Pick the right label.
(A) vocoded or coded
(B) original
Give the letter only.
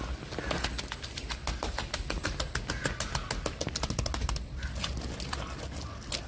B